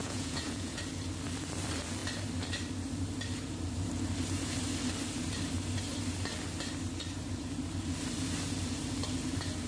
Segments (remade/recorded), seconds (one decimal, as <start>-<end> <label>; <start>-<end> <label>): 0.0-0.8 remade; 0.8-9.7 recorded